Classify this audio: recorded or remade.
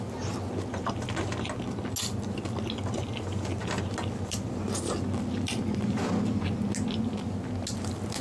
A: recorded